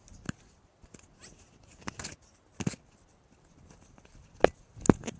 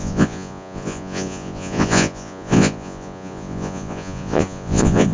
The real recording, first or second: first